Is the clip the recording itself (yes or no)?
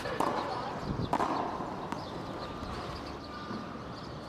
yes